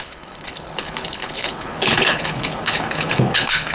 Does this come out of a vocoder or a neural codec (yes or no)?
yes